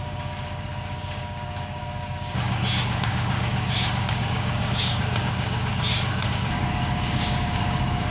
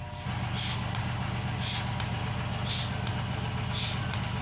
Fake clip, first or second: first